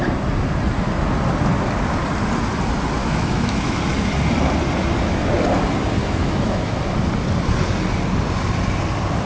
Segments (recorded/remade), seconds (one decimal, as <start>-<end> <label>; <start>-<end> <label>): 0.0-3.0 recorded; 3.0-3.8 remade; 3.8-6.0 recorded; 6.0-6.8 remade; 6.8-9.3 recorded